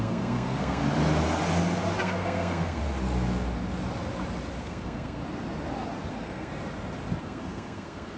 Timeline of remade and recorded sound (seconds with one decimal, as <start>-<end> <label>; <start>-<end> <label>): 0.0-0.8 remade; 0.8-2.0 recorded; 2.0-2.8 remade; 2.8-4.6 recorded; 4.6-5.2 remade; 5.2-6.1 recorded; 6.1-6.5 remade; 6.5-7.2 recorded; 7.2-8.2 remade